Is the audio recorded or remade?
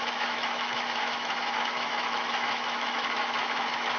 remade